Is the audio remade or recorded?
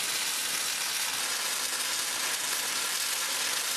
recorded